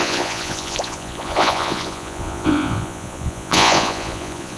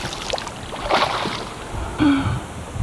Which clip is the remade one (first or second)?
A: first